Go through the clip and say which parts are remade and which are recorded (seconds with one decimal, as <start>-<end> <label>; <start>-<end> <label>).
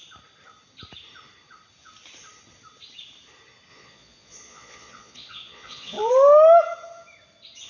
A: 0.0-3.7 recorded; 3.7-6.1 remade; 6.1-7.7 recorded